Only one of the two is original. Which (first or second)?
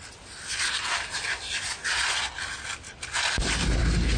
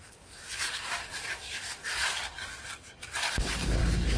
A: first